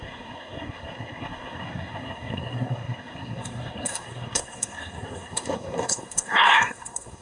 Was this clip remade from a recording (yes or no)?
yes